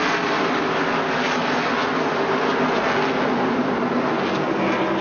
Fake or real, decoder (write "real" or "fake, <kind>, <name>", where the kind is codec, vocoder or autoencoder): real